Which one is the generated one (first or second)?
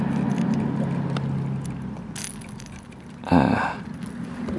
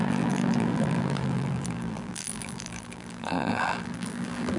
second